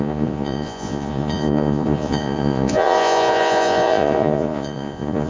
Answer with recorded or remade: remade